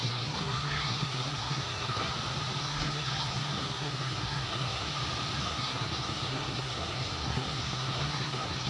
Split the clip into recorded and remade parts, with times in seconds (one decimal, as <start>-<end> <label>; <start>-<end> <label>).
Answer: 0.0-2.1 remade; 2.1-2.6 recorded; 2.6-4.9 remade; 4.9-5.4 recorded; 5.4-8.7 remade